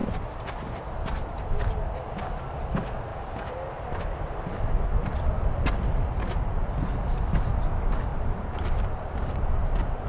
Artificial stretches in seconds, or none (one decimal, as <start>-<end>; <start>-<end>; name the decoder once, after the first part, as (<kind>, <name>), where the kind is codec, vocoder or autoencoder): 0.0-1.6 (vocoder, BigVGAN v2); 3.1-4.0; 8.1-10.1